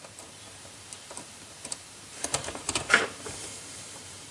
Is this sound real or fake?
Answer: fake